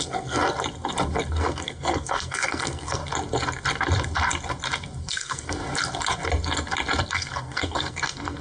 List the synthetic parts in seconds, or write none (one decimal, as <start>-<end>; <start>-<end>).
0.0-0.4; 1.3-3.0; 5.0-5.6; 7.1-8.4